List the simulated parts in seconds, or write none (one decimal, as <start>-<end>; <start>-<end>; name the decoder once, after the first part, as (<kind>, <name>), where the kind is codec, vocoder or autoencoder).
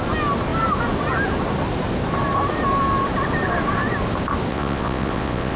4.5-5.6 (vocoder, WaveNeXt)